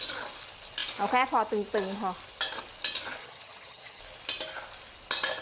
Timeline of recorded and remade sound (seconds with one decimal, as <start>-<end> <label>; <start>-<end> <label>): 0.0-3.2 recorded; 3.2-4.0 remade; 4.0-5.4 recorded